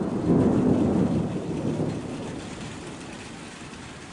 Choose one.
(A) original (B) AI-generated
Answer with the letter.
A